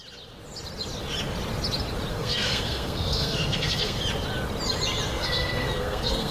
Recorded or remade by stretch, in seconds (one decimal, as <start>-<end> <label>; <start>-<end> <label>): 0.0-2.1 recorded; 2.1-4.0 remade; 4.0-5.1 recorded; 5.1-6.3 remade